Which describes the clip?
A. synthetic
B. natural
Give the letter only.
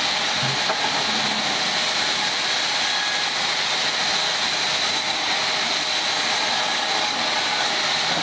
B